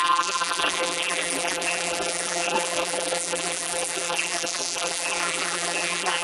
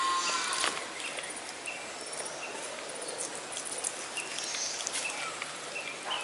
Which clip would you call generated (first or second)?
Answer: first